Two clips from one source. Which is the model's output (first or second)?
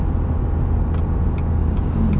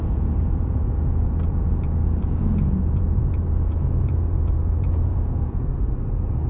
second